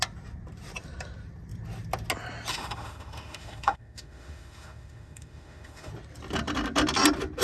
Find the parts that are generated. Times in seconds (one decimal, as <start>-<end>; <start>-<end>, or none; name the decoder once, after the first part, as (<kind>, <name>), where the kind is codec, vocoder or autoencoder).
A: 2.5-5.9 (autoencoder, DAC-VAE)